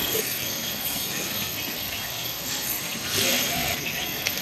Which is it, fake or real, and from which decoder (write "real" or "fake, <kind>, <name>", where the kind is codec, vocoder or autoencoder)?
fake, codec, SNAC